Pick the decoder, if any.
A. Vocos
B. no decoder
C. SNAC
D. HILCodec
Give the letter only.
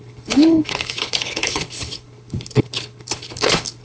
D